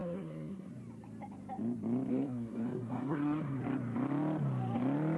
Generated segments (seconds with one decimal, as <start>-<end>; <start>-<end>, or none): 0.0-0.7; 2.1-3.6